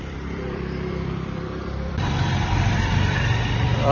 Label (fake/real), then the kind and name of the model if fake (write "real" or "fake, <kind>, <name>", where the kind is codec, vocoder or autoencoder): fake, vocoder, BigVGAN v2